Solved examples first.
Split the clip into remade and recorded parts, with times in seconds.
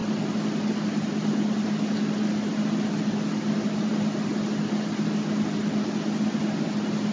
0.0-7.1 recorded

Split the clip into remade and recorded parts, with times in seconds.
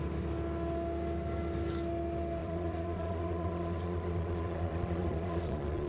0.0-2.4 recorded; 2.4-5.9 remade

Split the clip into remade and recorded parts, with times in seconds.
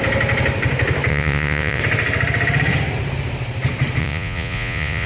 0.0-1.1 recorded; 1.1-1.8 remade; 1.8-4.0 recorded; 4.0-5.1 remade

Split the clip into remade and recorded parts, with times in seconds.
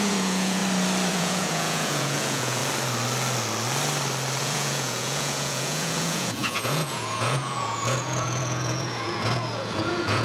0.0-0.6 remade; 0.6-1.1 recorded; 1.1-2.6 remade; 2.6-4.4 recorded; 4.4-10.2 remade